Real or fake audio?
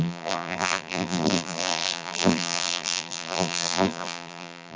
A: fake